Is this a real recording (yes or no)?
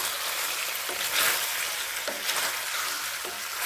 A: yes